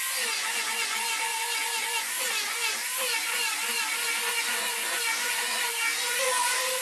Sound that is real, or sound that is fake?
fake